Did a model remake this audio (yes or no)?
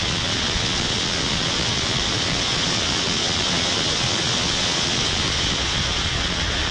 yes